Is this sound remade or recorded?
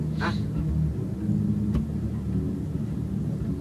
recorded